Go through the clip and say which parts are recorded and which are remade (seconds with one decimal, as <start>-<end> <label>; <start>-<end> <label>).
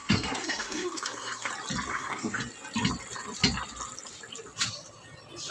0.0-1.5 remade; 1.5-1.9 recorded; 1.9-2.4 remade; 2.4-5.5 recorded